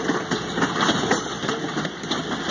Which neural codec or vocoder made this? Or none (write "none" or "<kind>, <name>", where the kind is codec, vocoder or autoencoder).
none